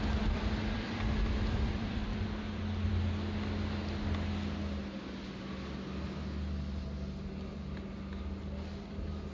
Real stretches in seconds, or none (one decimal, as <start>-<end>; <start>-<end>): 2.9-9.3